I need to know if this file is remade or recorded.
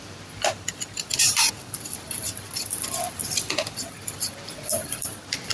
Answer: remade